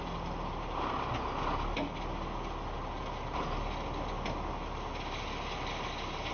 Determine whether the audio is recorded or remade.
recorded